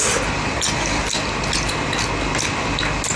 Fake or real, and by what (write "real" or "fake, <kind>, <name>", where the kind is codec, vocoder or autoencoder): real